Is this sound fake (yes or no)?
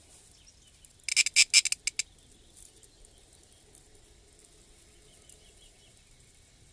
no